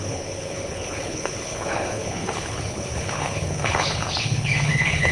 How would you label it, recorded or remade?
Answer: remade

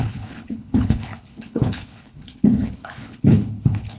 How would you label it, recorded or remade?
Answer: remade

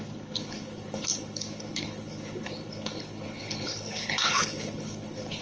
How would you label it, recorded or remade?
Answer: remade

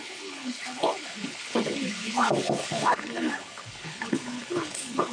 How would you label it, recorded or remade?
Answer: remade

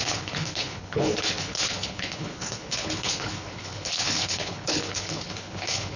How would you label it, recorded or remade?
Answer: remade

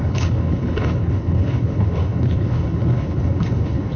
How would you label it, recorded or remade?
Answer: remade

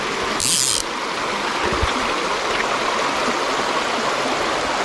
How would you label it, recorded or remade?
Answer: recorded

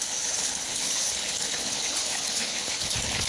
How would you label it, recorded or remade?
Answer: remade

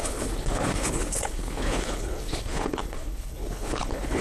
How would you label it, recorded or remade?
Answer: remade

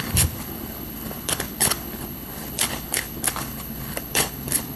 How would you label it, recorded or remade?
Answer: remade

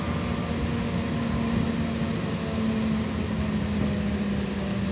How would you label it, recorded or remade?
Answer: recorded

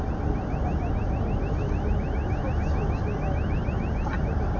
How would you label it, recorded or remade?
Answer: recorded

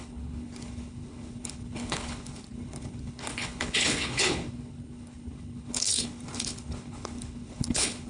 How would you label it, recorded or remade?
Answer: remade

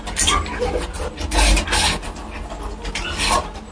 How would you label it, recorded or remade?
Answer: recorded